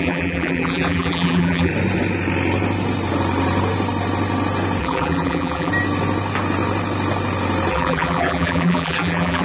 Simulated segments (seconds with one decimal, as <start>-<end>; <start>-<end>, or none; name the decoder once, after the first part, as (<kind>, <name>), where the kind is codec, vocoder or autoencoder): 0.0-1.7 (vocoder, BigVGAN v2); 4.8-5.7; 7.7-9.4